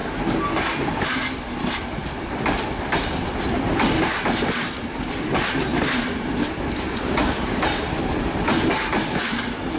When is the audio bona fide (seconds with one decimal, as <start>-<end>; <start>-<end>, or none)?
0.0-1.0